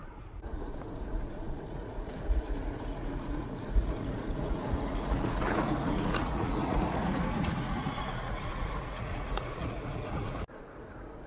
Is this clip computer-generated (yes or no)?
yes